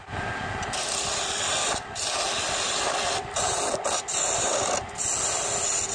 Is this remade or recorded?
recorded